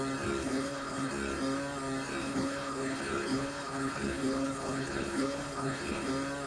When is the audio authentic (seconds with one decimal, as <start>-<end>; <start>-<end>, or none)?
0.0-0.4; 1.1-2.2; 6.1-6.5